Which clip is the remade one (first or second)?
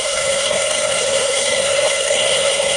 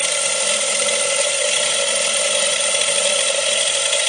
first